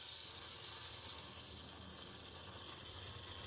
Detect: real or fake real